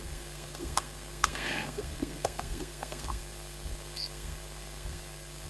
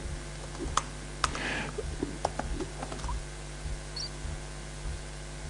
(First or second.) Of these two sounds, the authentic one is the second